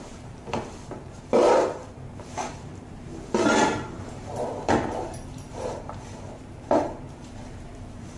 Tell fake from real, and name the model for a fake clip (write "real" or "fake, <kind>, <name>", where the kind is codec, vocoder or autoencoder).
fake, vocoder, BigVGAN v2